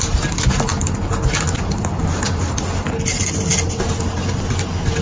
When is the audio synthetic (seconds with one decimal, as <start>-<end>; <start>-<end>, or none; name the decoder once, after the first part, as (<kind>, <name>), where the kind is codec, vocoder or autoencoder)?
none